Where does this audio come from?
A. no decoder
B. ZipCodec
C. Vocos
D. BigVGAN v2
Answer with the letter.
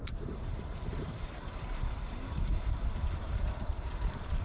D